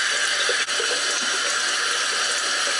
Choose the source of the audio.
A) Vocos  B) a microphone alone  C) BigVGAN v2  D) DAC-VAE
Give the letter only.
B